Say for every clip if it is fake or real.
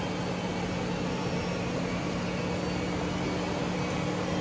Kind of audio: real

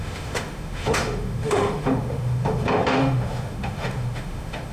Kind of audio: fake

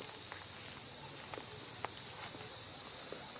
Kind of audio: real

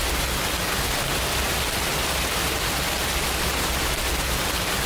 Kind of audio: real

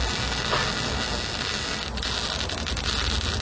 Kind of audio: real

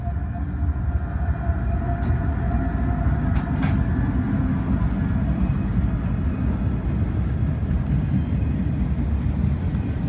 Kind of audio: real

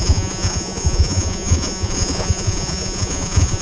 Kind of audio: fake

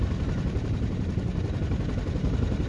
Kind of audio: real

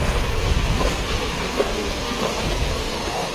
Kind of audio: fake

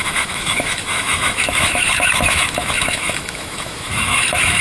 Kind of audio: fake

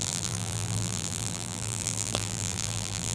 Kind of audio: fake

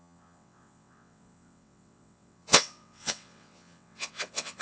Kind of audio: fake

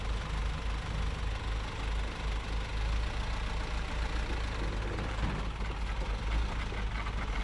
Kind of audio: real